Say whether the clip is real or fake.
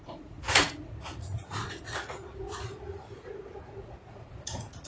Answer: fake